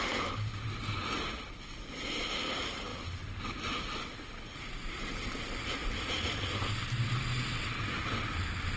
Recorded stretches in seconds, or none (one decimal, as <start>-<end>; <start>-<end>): 0.0-8.8